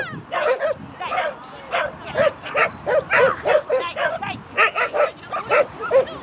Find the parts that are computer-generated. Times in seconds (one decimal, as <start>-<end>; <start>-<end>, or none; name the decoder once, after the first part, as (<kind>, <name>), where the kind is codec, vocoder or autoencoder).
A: 0.0-4.2 (vocoder, BigVGAN v2); 5.5-6.2